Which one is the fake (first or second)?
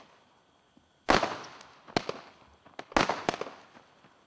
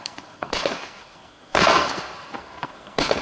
second